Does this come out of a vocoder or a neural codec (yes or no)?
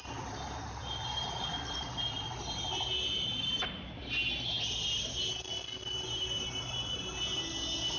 no